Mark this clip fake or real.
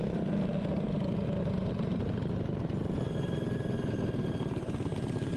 real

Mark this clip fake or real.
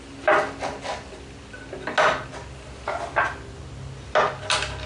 real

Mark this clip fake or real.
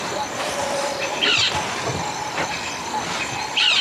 real